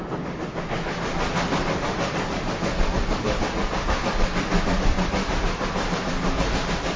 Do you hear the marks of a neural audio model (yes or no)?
no